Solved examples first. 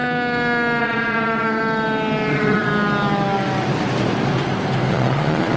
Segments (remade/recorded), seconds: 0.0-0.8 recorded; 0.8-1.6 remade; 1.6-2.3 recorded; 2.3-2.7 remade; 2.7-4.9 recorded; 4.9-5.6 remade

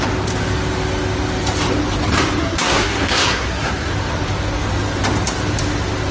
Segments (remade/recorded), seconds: 0.0-2.4 recorded; 2.4-3.9 remade; 3.9-6.1 recorded

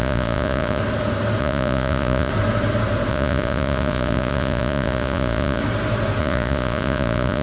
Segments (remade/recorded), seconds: 0.0-0.8 remade; 0.8-1.4 recorded; 1.4-2.3 remade; 2.3-3.1 recorded; 3.1-5.6 remade; 5.6-6.2 recorded; 6.2-7.4 remade

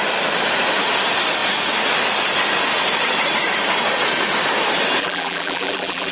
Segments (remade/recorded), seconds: 0.0-5.0 recorded; 5.0-6.1 remade

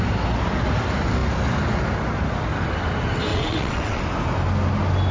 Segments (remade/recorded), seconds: 0.0-3.3 recorded; 3.3-4.0 remade; 4.0-5.1 recorded

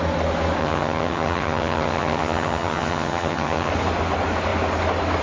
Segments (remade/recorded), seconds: 0.0-0.6 recorded; 0.6-3.7 remade; 3.7-5.2 recorded

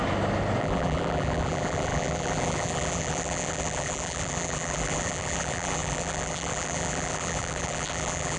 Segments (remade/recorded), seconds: 0.0-0.6 recorded; 0.6-8.4 remade

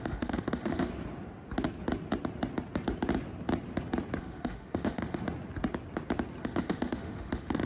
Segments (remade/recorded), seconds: 0.0-0.9 remade; 0.9-4.2 recorded; 4.2-5.2 remade; 5.2-6.4 recorded; 6.4-7.7 remade